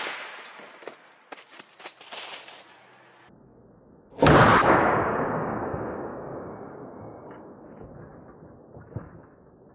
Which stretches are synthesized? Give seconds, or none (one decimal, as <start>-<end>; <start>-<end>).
4.5-7.5